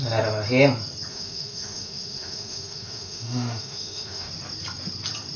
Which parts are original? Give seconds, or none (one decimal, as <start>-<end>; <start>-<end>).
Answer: 0.0-1.1; 4.3-5.4